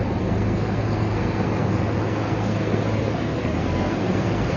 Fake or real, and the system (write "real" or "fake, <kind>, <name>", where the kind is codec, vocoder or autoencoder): fake, codec, SNAC